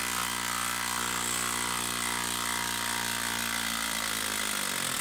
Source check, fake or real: real